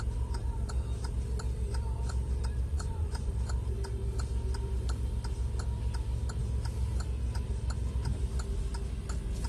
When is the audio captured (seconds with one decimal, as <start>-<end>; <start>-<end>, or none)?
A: 0.0-2.7; 3.3-9.5